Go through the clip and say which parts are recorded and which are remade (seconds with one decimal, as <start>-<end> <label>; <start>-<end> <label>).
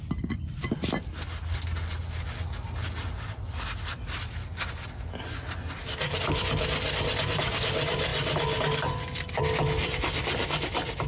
0.0-11.1 recorded